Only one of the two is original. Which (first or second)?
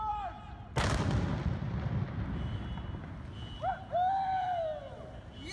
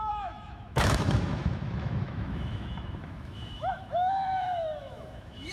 first